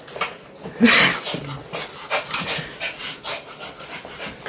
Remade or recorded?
recorded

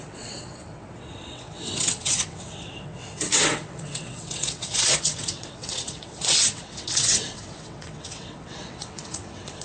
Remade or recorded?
remade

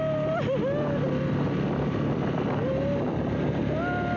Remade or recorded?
recorded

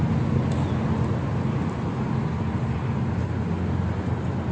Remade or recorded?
recorded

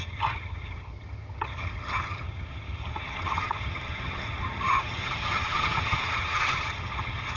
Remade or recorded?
remade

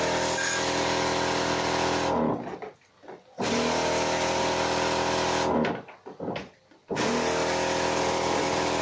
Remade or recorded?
recorded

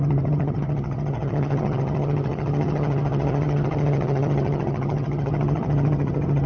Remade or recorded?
remade